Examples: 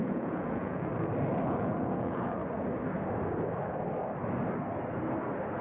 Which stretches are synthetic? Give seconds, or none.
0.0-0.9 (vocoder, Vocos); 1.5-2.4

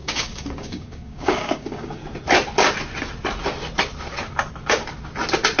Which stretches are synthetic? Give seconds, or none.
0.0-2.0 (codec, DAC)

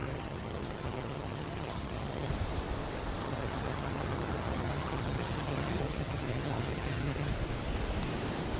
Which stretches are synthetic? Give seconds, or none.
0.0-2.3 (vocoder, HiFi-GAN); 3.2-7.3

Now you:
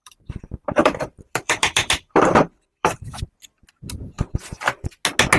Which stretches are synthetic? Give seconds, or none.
0.0-3.2 (vocoder, BigVGAN v2)